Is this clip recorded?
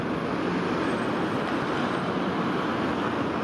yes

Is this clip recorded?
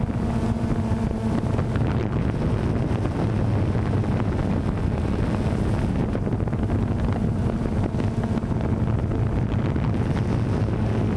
yes